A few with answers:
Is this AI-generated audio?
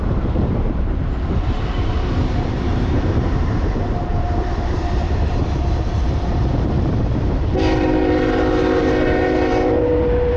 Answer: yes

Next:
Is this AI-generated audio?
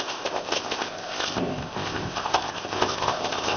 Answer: yes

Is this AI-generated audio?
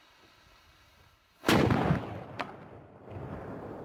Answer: no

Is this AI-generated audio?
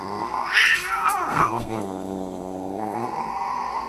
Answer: yes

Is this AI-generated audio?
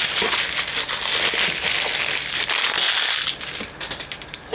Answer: no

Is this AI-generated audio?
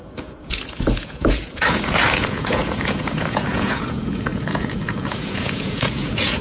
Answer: yes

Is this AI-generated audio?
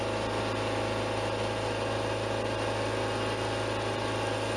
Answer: no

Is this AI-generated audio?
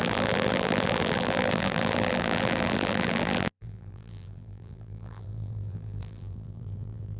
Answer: yes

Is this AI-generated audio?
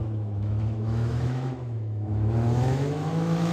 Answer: yes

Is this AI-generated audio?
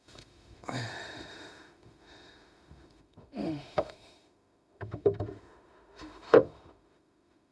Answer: yes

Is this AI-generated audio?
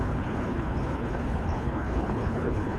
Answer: yes